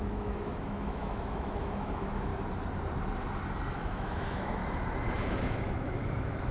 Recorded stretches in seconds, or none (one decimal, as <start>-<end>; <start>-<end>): 2.3-3.7; 4.6-5.2